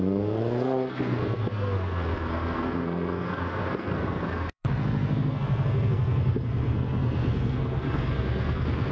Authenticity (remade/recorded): remade